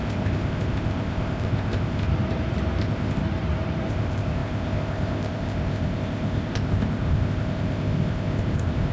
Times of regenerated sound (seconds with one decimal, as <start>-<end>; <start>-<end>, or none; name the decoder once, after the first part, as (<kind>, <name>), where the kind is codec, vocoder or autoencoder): 0.0-2.1 (codec, ZipCodec); 2.8-3.2; 3.9-8.9

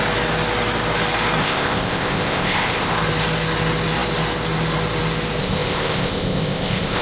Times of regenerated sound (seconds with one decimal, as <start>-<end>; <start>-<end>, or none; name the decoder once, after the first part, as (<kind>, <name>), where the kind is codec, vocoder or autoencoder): 1.4-2.9 (codec, ZipCodec); 5.4-7.0

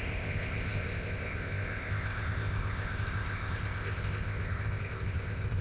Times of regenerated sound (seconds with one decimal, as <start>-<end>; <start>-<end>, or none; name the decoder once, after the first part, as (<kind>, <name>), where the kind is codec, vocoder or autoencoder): 0.0-5.6 (codec, ZipCodec)